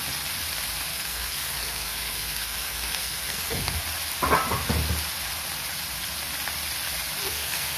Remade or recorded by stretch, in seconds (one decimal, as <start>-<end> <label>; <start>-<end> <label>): 0.0-0.9 recorded; 0.9-3.8 remade; 3.8-7.2 recorded; 7.2-7.8 remade